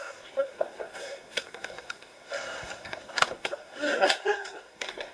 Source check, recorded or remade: remade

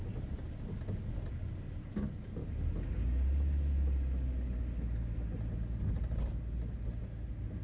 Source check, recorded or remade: recorded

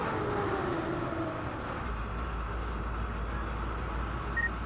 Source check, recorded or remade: recorded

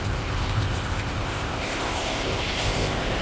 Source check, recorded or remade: remade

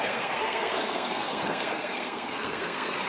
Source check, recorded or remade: remade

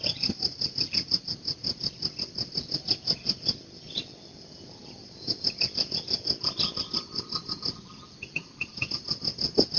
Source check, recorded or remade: recorded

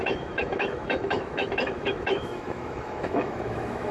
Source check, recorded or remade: remade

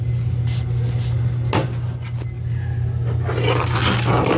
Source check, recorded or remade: recorded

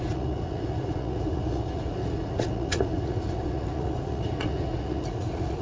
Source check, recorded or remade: remade